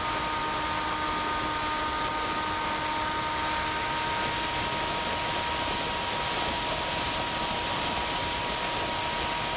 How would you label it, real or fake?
real